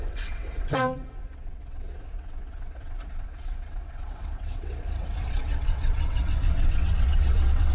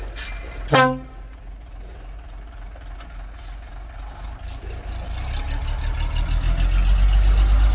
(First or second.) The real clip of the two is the second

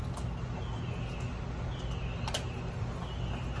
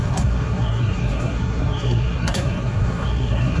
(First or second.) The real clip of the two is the first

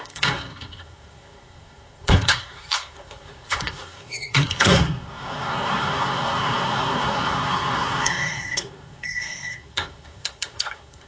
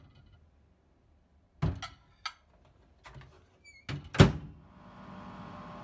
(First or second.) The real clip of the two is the second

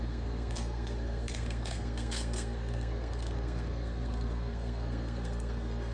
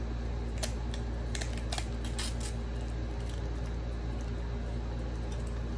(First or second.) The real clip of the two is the second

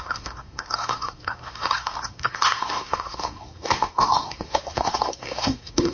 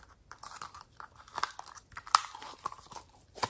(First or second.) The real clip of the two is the second